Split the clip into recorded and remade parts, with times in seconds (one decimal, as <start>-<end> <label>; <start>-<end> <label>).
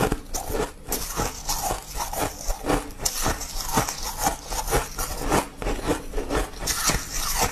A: 0.0-7.5 recorded